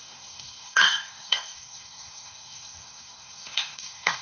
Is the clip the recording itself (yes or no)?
no